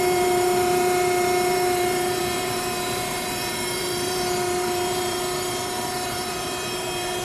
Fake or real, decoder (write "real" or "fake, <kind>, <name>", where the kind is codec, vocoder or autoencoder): fake, vocoder, BigVGAN v2